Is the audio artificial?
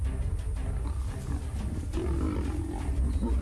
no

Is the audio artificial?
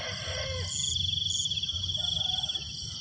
no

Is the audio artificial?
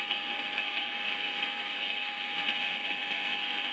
yes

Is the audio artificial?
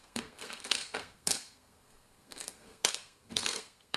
yes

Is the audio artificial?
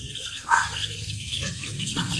yes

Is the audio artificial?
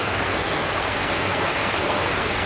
yes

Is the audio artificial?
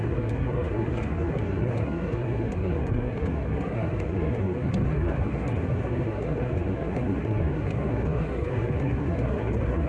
yes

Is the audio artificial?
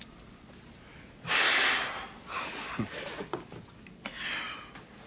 no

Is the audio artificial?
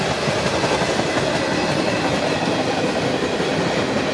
no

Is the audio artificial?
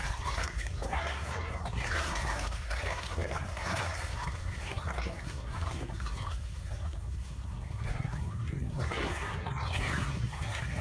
yes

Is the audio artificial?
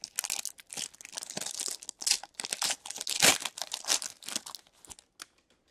no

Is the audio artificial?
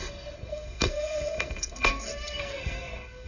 yes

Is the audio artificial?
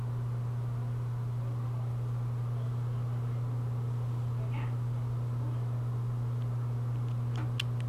no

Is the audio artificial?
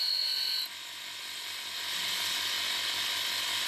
no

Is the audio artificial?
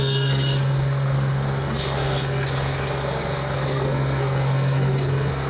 yes